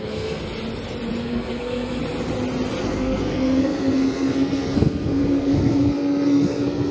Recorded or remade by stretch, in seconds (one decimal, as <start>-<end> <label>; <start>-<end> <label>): 0.0-0.4 remade; 0.4-1.2 recorded; 1.2-2.0 remade; 2.0-2.8 recorded; 2.8-6.9 remade